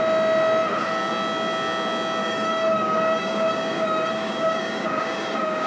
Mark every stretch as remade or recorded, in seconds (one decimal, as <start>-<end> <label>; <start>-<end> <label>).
0.0-2.2 recorded; 2.2-5.7 remade